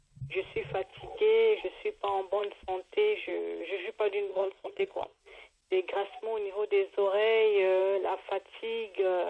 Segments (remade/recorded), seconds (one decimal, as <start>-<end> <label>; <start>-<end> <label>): 0.0-4.3 recorded; 4.3-5.2 remade; 5.2-9.3 recorded

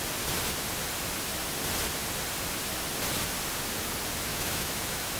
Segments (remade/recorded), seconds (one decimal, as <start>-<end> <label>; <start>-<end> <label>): 0.0-4.3 recorded; 4.3-5.2 remade

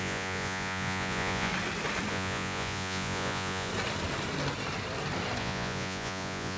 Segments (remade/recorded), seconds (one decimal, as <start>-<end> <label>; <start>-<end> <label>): 0.0-1.5 remade; 1.5-2.1 recorded; 2.1-3.7 remade; 3.7-5.4 recorded; 5.4-6.6 remade

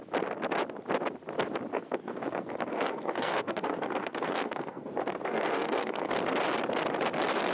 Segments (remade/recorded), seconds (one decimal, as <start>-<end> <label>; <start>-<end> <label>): 0.0-1.7 recorded; 1.7-6.1 remade; 6.1-7.5 recorded

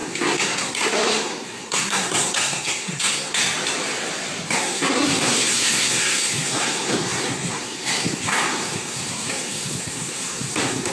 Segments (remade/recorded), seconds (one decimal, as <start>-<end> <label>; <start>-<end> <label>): 0.0-3.4 remade; 3.4-4.5 recorded; 4.5-10.9 remade

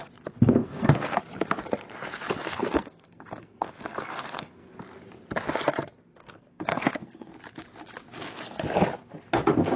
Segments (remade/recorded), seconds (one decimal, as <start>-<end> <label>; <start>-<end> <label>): 0.0-0.6 recorded; 0.6-1.2 remade; 1.2-2.5 recorded; 2.5-4.7 remade; 4.7-6.2 recorded; 6.2-7.3 remade; 7.3-9.8 recorded